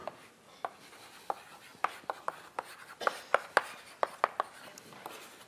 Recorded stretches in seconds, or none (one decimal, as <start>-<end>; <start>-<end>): 0.0-5.5